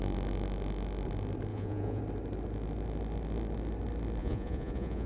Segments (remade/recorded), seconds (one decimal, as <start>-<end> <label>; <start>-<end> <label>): 0.0-1.5 recorded; 1.5-2.0 remade; 2.0-4.2 recorded; 4.2-5.1 remade

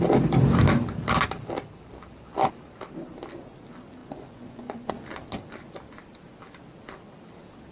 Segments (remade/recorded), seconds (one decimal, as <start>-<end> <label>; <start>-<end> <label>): 0.0-4.0 recorded; 4.0-4.9 remade; 4.9-7.7 recorded

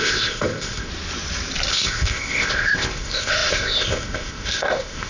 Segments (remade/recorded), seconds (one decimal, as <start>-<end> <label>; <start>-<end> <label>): 0.0-0.9 remade; 0.9-1.7 recorded; 1.7-5.1 remade

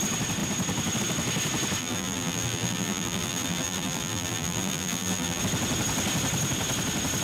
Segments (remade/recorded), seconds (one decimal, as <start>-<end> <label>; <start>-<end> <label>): 0.0-1.8 recorded; 1.8-5.4 remade; 5.4-7.2 recorded

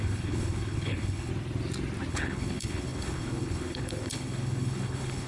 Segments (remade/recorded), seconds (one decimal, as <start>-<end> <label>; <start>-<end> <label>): 0.0-1.3 remade; 1.3-2.1 recorded; 2.1-5.3 remade